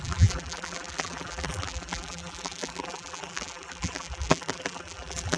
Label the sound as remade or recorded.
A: remade